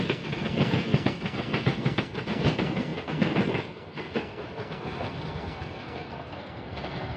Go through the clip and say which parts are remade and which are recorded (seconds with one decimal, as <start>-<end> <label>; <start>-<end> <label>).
0.0-7.2 remade